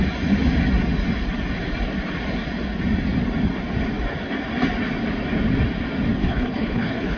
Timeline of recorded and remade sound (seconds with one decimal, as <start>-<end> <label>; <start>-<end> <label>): 0.0-6.2 recorded; 6.2-7.2 remade